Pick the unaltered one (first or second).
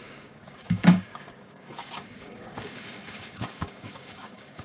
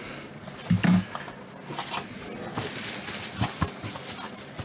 second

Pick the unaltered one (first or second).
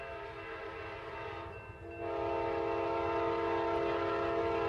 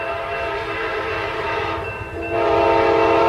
first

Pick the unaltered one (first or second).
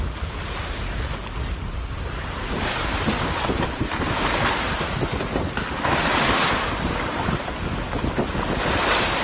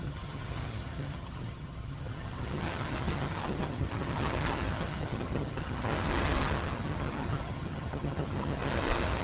first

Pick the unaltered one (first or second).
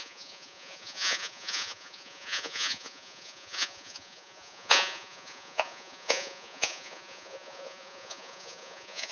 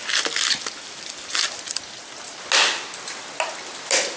second